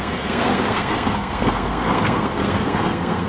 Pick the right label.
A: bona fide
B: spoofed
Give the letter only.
B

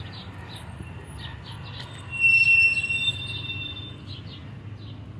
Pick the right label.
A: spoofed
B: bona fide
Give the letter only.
B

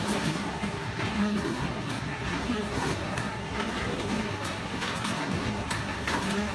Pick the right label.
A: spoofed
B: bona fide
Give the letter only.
A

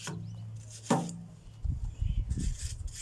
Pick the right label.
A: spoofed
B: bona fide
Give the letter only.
B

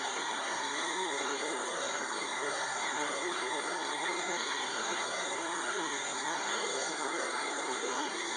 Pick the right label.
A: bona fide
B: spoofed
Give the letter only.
B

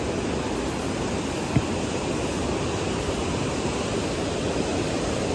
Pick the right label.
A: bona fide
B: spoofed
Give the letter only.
A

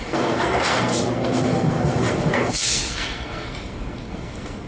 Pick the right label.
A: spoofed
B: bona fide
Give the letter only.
A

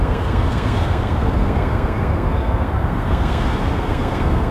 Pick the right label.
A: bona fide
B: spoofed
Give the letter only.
B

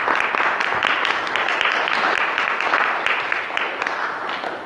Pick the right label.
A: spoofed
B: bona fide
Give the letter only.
B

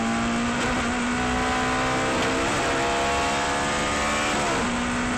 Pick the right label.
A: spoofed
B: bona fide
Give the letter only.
B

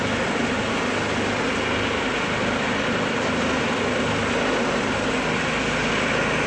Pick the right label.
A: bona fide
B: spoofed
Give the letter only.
A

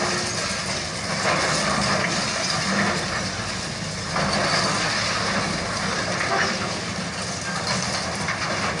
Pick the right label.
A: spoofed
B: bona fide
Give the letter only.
B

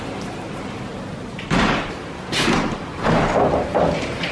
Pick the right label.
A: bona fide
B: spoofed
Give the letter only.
A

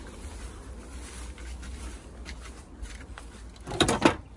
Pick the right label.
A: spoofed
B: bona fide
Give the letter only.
B